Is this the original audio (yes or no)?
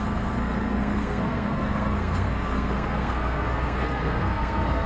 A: no